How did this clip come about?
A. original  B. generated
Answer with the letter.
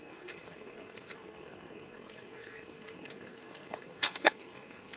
B